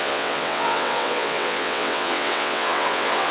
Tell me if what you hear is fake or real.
fake